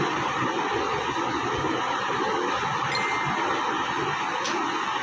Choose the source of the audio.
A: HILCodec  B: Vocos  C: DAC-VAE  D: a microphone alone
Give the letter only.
D